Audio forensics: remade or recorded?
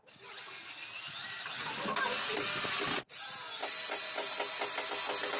recorded